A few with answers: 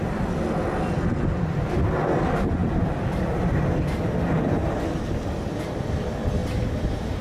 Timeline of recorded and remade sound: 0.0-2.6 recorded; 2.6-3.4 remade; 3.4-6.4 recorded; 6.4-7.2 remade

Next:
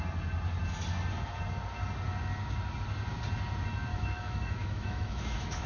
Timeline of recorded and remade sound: 0.0-3.9 recorded; 3.9-5.7 remade

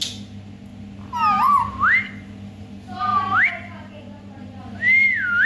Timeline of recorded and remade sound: 0.0-5.5 recorded

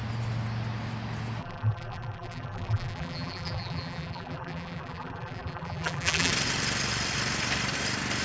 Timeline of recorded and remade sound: 0.0-1.4 recorded; 1.4-6.3 remade; 6.3-8.2 recorded

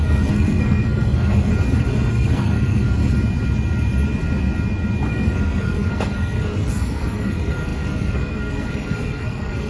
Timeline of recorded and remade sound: 0.0-1.5 remade; 1.5-2.1 recorded; 2.1-3.0 remade; 3.0-5.1 recorded; 5.1-9.7 remade

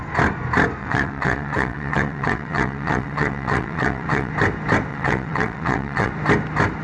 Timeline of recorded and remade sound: 0.0-0.8 recorded; 0.8-4.3 remade; 4.3-4.9 recorded; 4.9-6.1 remade; 6.1-6.8 recorded